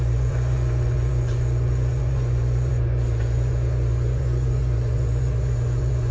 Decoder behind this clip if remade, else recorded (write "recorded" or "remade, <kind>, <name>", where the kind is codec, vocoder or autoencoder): remade, vocoder, Vocos